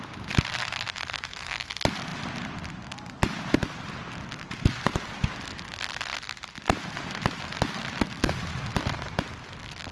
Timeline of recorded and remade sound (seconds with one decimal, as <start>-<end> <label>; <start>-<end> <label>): 0.0-0.6 recorded; 0.6-1.7 remade; 1.7-9.9 recorded